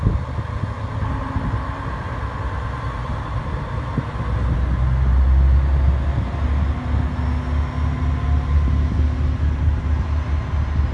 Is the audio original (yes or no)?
yes